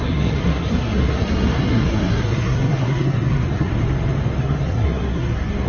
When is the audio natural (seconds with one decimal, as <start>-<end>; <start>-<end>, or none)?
3.7-4.4